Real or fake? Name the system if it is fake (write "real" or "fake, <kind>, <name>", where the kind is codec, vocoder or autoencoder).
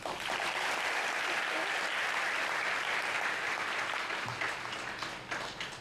real